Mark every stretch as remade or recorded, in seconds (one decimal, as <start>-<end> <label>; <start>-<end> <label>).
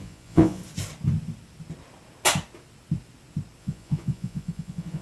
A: 0.0-0.6 remade; 0.6-3.6 recorded; 3.6-5.0 remade